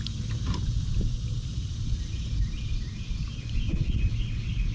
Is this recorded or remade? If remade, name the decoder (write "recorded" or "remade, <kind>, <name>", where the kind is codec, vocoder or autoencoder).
recorded